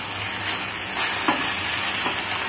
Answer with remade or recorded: recorded